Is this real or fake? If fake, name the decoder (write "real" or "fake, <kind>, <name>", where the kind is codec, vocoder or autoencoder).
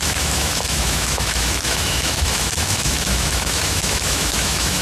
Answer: fake, autoencoder, DAC-VAE